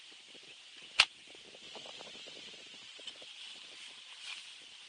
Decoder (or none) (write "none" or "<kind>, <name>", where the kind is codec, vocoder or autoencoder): none